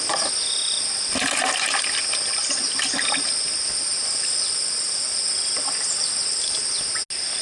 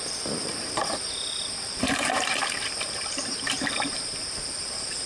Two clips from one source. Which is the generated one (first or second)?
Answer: second